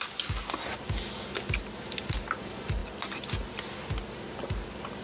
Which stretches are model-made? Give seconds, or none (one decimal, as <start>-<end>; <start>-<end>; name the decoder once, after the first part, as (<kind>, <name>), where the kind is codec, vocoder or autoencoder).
none